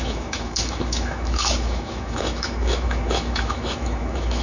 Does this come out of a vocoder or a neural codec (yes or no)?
yes